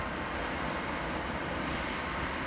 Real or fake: real